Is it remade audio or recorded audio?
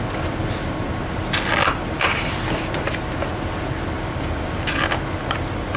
recorded